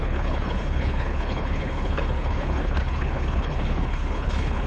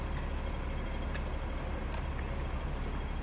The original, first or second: second